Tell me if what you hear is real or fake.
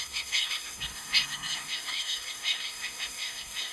fake